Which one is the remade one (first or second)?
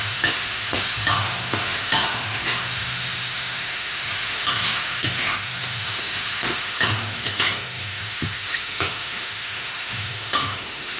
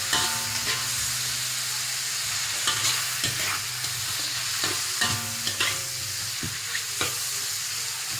first